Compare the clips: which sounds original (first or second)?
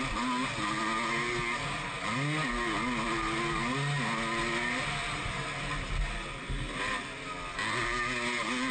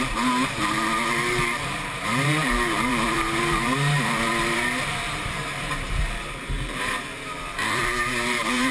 first